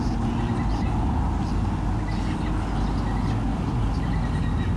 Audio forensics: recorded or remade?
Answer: recorded